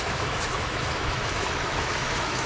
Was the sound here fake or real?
fake